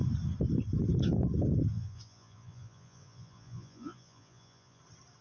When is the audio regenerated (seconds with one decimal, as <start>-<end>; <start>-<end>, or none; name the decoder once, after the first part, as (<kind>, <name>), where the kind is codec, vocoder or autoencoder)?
1.7-4.8 (vocoder, Vocos)

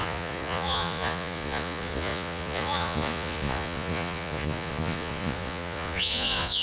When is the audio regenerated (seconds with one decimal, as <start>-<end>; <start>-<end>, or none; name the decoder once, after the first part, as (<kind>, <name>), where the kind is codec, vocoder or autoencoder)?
0.0-6.6 (vocoder, Vocos)

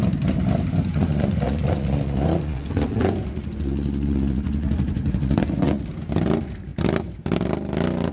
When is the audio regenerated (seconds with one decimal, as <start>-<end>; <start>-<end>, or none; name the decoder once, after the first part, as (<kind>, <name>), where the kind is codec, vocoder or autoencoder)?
0.9-5.8 (vocoder, Vocos)

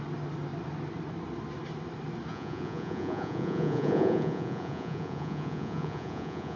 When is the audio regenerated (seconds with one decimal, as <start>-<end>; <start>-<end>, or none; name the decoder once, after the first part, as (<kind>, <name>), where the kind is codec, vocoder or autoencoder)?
2.3-6.6 (vocoder, Vocos)

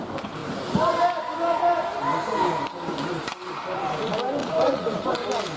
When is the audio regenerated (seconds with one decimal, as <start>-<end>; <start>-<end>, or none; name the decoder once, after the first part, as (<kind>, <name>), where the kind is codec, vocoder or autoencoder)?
4.4-5.1 (vocoder, Vocos)

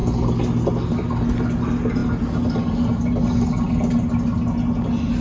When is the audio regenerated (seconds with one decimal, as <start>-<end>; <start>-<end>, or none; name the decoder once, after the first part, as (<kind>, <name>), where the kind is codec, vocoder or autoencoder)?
none

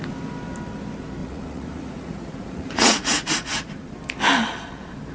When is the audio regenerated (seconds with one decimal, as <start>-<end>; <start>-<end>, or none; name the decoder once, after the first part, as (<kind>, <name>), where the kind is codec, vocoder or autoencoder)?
1.2-3.7 (vocoder, Vocos)

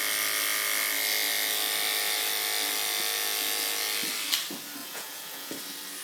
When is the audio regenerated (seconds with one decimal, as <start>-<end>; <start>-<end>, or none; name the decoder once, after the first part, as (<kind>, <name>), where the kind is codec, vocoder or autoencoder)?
4.8-5.5 (vocoder, Vocos)